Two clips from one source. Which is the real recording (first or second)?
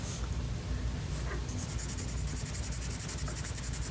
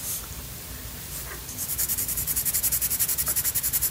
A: first